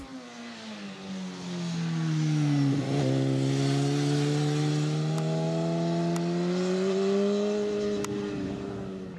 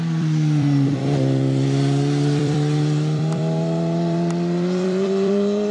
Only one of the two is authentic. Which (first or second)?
first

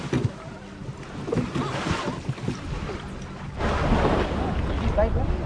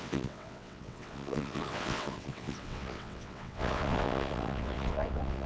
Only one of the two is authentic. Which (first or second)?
first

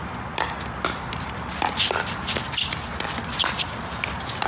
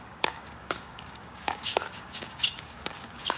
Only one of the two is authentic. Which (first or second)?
first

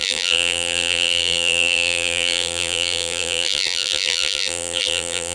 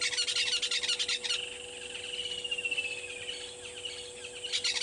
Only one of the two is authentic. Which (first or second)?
second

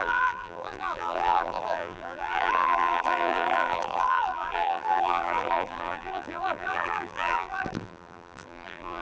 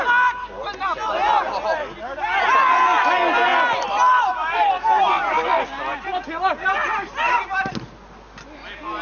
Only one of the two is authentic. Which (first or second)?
second